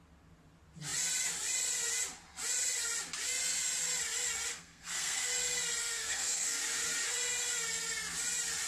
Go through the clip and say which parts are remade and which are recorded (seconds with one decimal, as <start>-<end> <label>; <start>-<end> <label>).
0.0-4.5 recorded; 4.5-5.3 remade; 5.3-5.8 recorded; 5.8-6.6 remade; 6.6-8.7 recorded